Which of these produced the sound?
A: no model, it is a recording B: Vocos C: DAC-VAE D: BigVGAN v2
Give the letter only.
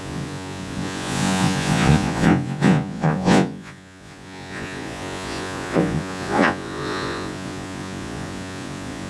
B